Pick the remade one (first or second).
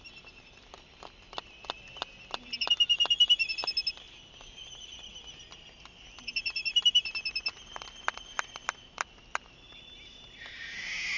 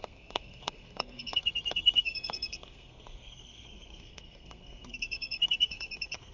second